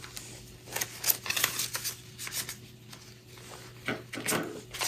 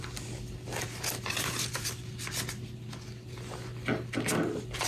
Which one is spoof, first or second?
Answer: second